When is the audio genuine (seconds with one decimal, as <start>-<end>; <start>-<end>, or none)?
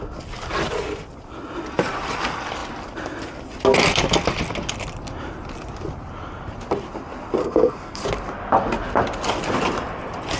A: 0.0-7.4; 8.0-10.4